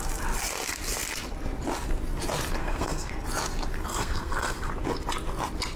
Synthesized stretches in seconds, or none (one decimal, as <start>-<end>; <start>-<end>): 2.6-3.1; 3.9-4.7